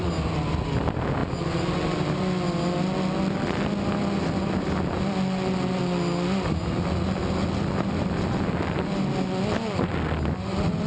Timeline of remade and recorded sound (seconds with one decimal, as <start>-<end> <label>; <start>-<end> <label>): 0.0-10.9 recorded